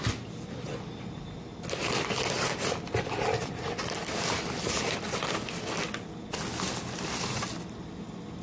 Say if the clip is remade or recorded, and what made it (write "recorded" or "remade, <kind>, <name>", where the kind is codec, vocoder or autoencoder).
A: recorded